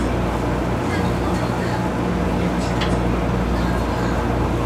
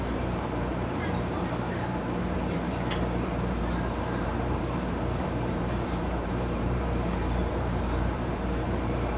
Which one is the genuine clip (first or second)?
first